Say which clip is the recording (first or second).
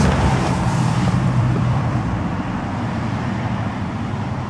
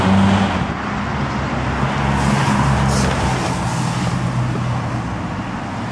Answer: second